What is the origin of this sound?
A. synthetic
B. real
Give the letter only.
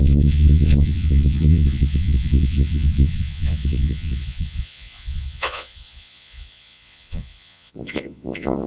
A